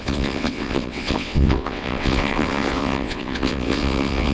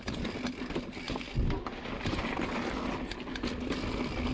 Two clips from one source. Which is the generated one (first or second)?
first